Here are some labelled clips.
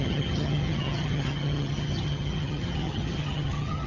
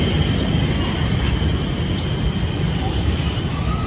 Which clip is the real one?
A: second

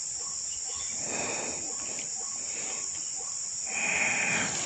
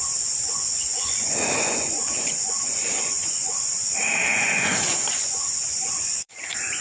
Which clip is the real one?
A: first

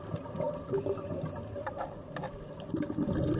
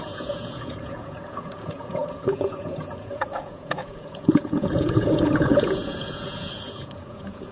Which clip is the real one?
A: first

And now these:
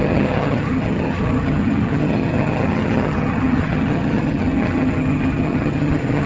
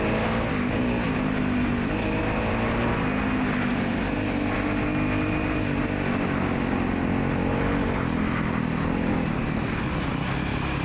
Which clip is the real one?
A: second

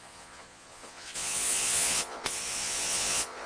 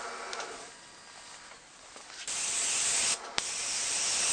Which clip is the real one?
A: second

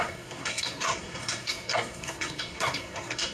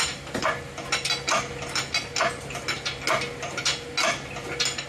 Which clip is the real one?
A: second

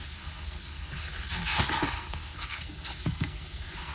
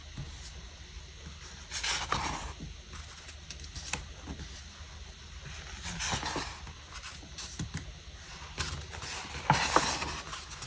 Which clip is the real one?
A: second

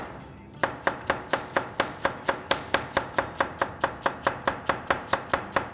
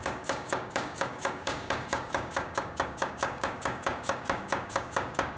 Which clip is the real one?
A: first